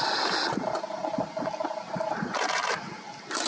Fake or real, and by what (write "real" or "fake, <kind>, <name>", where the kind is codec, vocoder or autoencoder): real